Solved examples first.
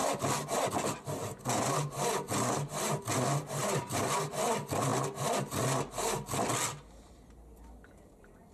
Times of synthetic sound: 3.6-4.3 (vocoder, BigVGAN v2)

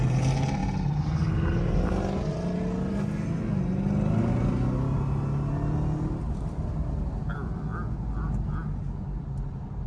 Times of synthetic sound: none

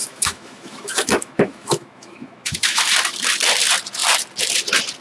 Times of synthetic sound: 0.0-2.8 (autoencoder, DAC-VAE)

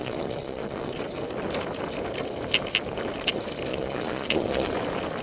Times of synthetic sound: 0.0-0.9 (vocoder, Vocos); 3.7-4.7

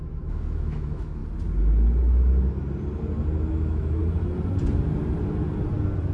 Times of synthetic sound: 0.0-1.2 (autoencoder, DAC-VAE); 3.5-4.0